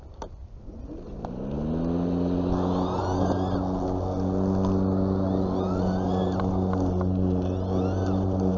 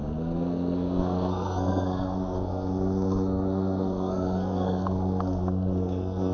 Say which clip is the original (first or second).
first